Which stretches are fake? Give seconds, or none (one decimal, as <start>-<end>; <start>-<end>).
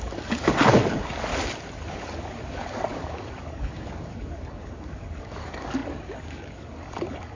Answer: 0.0-1.3; 1.9-7.4